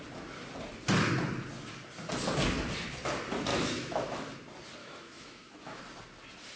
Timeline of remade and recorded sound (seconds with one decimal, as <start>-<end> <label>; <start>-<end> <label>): 0.0-3.5 recorded; 3.5-4.3 remade; 4.3-4.8 recorded; 4.8-5.8 remade; 5.8-6.6 recorded